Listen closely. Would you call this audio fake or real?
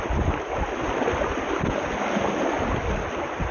real